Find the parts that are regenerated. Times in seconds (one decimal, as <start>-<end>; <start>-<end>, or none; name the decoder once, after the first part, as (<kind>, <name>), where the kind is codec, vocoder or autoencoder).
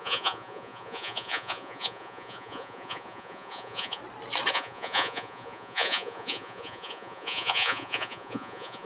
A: 0.0-4.0 (vocoder, Vocos); 4.5-8.9